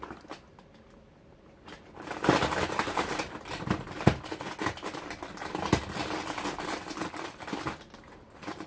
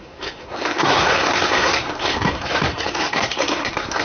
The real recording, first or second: first